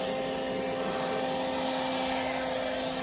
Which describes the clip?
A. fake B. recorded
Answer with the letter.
B